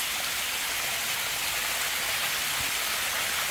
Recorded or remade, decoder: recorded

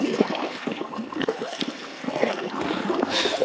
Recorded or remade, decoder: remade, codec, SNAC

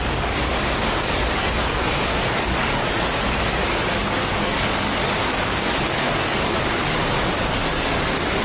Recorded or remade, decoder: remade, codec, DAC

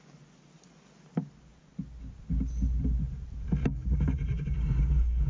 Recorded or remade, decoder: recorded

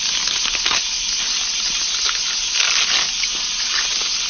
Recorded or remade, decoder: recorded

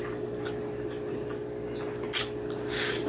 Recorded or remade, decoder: recorded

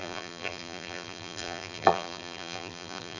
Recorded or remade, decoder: remade, vocoder, BigVGAN v2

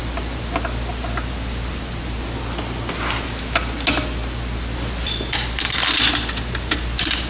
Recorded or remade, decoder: recorded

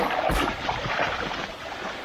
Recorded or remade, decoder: recorded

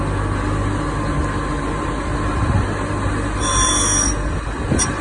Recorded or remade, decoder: recorded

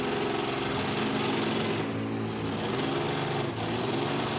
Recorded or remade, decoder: recorded